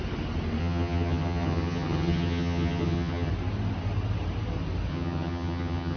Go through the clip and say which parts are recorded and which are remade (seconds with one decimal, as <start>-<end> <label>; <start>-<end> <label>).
0.0-0.6 recorded; 0.6-3.3 remade; 3.3-4.9 recorded; 4.9-6.0 remade

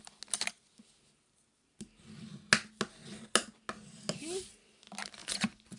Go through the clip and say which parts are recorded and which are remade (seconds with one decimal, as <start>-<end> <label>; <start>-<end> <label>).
0.0-5.2 recorded; 5.2-5.8 remade